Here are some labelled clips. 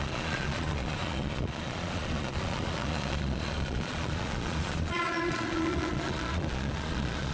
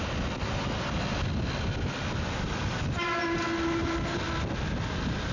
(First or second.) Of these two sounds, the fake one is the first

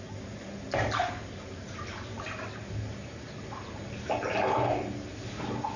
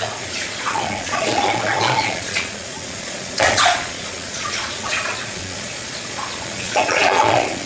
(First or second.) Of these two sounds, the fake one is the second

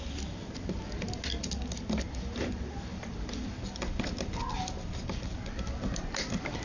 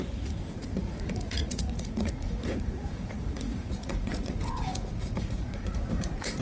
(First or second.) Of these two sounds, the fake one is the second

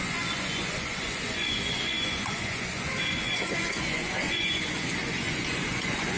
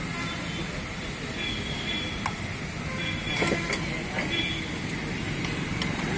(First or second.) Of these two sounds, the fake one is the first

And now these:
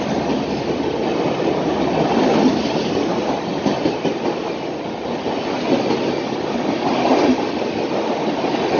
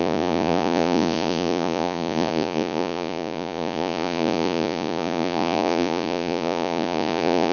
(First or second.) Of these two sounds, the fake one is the second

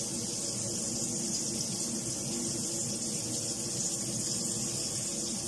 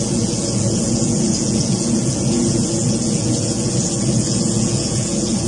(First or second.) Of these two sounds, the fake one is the second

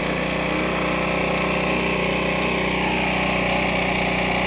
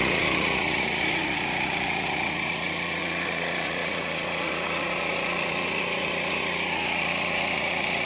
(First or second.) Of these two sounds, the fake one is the second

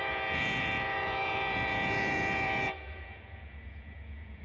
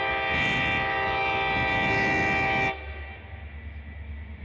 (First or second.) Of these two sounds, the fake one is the first